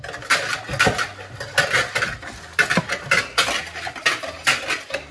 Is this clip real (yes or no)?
yes